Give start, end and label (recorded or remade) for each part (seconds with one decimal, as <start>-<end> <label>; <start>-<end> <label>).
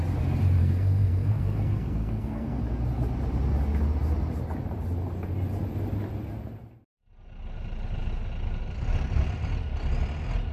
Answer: 0.0-0.6 recorded; 0.6-2.6 remade; 2.6-10.5 recorded